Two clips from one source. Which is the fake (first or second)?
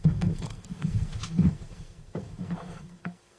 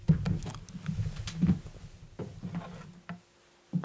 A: first